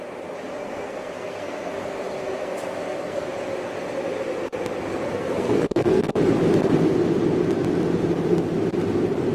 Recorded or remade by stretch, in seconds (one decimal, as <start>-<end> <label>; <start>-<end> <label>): 0.0-0.6 recorded; 0.6-3.3 remade; 3.3-4.9 recorded; 4.9-6.2 remade; 6.2-9.3 recorded